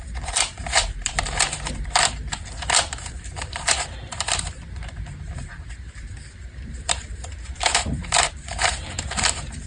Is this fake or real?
fake